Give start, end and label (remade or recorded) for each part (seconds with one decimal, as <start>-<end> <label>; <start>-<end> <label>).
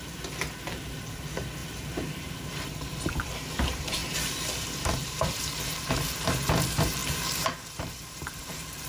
0.0-8.9 remade